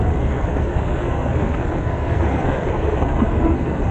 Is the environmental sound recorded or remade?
remade